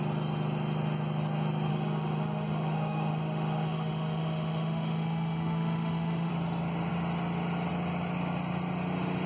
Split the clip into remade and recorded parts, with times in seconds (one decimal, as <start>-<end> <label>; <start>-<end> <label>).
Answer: 0.0-1.7 recorded; 1.7-6.3 remade; 6.3-9.3 recorded